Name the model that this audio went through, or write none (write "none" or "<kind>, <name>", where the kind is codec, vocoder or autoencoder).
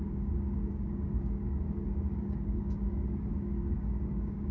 codec, DAC